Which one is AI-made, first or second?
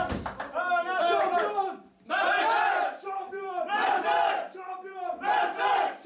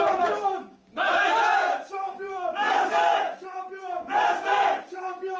second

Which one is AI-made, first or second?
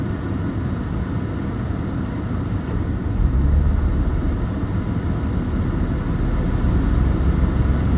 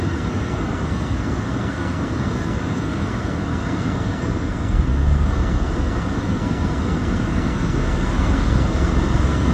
second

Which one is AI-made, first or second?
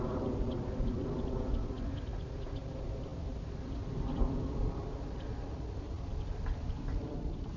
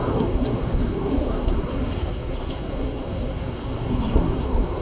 second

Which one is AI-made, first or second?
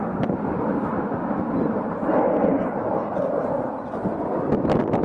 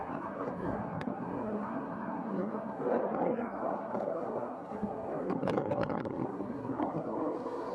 second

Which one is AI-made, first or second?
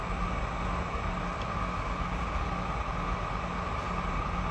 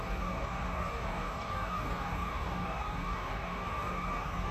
second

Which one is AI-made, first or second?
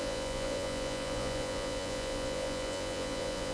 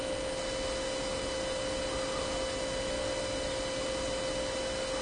first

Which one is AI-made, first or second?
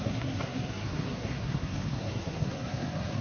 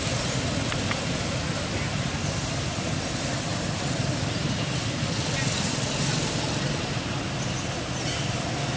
first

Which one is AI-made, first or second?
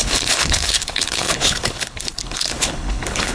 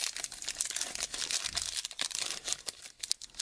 first